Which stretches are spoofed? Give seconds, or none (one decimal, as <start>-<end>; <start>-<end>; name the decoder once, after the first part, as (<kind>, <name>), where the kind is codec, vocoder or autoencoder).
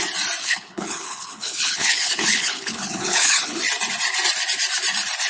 0.4-3.6 (codec, HILCodec)